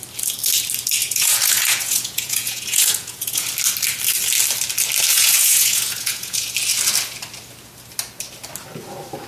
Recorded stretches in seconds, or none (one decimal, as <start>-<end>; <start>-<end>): 0.0-1.0; 3.5-5.1; 6.5-9.3